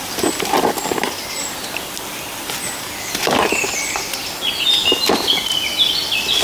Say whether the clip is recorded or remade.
remade